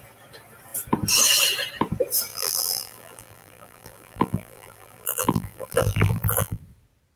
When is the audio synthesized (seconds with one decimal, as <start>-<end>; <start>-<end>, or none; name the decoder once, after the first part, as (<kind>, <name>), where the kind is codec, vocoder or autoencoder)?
2.3-6.6 (vocoder, BigVGAN v2)